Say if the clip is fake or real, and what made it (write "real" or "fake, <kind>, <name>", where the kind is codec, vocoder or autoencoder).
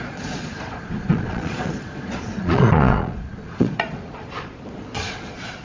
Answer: fake, vocoder, Vocos